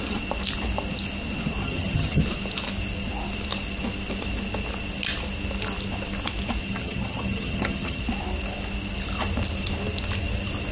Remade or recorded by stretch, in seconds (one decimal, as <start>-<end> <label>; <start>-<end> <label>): 0.0-1.6 recorded; 1.6-2.2 remade; 2.2-6.6 recorded; 6.6-8.0 remade; 8.0-10.7 recorded